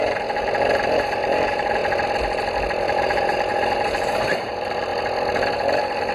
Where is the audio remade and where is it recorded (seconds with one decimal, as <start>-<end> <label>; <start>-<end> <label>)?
0.0-1.8 remade; 1.8-2.8 recorded; 2.8-4.9 remade; 4.9-5.5 recorded; 5.5-6.1 remade